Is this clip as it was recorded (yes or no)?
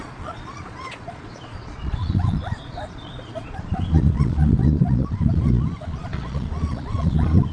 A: no